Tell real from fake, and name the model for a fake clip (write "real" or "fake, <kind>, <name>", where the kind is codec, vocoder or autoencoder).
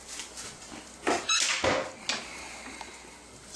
real